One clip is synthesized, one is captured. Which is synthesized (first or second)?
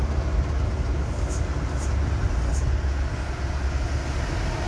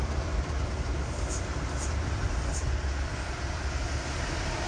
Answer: second